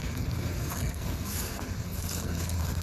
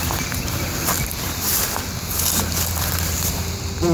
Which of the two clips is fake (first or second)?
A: first